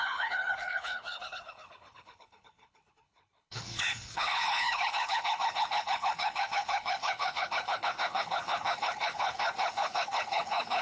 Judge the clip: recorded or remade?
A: remade